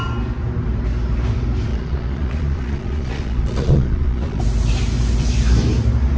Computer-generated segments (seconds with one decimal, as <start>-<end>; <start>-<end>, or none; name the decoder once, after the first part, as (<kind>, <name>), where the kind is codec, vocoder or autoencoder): 1.7-4.4 (vocoder, Vocos)